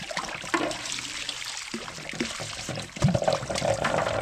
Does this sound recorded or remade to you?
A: remade